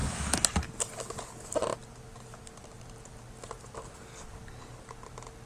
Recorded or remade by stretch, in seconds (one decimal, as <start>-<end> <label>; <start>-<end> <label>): 0.0-5.5 recorded